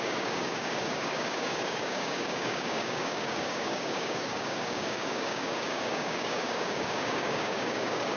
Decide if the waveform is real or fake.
fake